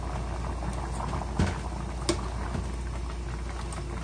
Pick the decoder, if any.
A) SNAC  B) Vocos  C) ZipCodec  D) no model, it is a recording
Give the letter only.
D